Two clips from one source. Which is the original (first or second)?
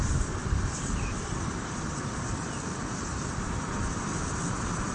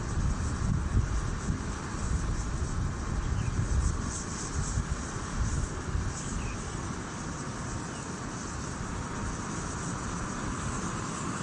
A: second